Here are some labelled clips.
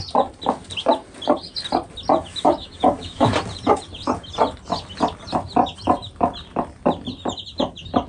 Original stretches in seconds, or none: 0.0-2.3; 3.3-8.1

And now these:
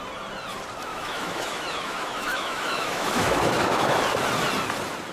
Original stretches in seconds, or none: 0.0-0.9; 4.0-5.1

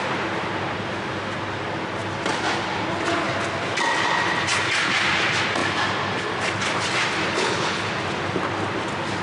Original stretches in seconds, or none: 0.0-7.3; 7.9-9.2

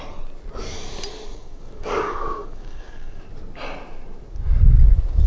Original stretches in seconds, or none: 0.0-1.3; 3.2-5.3

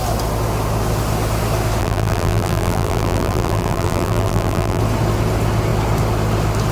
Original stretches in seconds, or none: 0.0-1.8; 4.8-6.7

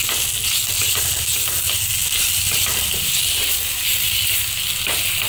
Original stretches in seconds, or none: 0.0-2.0; 4.6-5.3

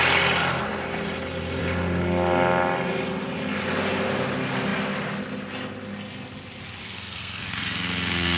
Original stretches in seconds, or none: 0.0-6.8

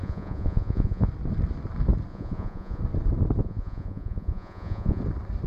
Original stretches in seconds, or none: 1.1-2.1; 2.8-3.4; 5.0-5.5